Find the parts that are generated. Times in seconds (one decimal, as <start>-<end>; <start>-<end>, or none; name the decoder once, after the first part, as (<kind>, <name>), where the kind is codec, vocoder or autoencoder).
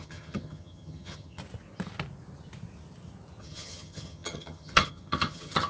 0.0-1.4 (vocoder, HiFi-GAN); 3.4-5.7